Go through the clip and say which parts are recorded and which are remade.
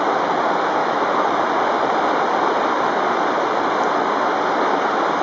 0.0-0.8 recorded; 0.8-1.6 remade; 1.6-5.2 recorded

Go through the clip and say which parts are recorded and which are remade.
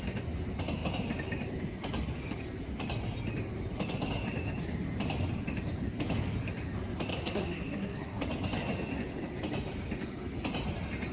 0.0-7.1 recorded; 7.1-8.2 remade; 8.2-11.1 recorded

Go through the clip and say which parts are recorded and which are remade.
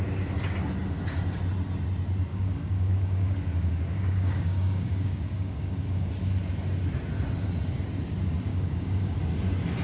0.0-2.3 recorded; 2.3-6.1 remade; 6.1-8.5 recorded; 8.5-9.2 remade; 9.2-9.8 recorded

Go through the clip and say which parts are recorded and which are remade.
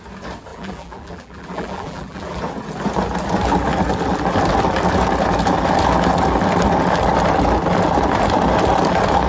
0.0-0.5 recorded; 0.5-2.4 remade; 2.4-9.3 recorded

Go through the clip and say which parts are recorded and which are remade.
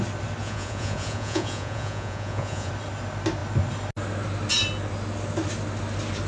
0.0-0.4 recorded; 0.4-2.7 remade; 2.7-6.3 recorded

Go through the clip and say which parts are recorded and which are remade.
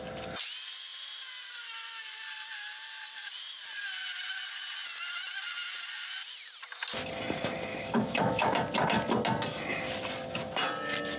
0.0-7.7 recorded; 7.7-8.5 remade; 8.5-11.2 recorded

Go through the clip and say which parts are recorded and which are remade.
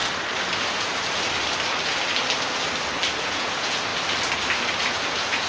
0.0-3.2 recorded; 3.2-3.9 remade; 3.9-4.8 recorded; 4.8-5.5 remade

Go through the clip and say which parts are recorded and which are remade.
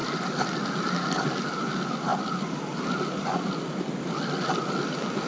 0.0-5.3 recorded